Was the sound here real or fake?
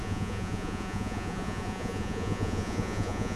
fake